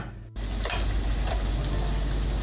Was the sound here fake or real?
real